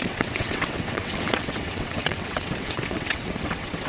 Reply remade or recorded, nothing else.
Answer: remade